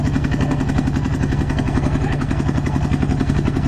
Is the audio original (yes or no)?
no